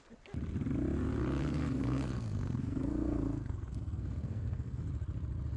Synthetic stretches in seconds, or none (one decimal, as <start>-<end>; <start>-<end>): 1.4-4.8